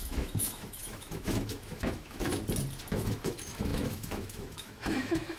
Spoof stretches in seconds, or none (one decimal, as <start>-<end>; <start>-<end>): 0.0-2.3; 2.9-5.4